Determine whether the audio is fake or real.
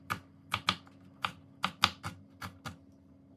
real